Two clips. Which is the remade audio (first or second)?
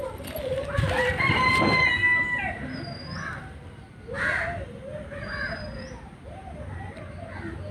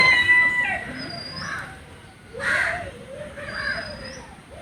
second